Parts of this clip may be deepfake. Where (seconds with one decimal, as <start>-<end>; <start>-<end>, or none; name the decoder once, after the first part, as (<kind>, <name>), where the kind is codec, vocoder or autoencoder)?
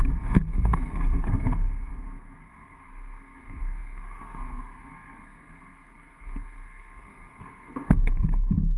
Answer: 0.0-8.8 (codec, SNAC)